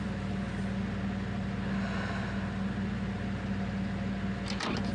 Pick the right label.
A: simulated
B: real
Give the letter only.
B